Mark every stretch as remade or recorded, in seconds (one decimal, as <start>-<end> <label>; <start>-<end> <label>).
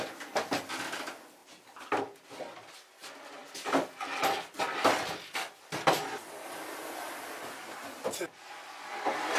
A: 0.0-9.4 recorded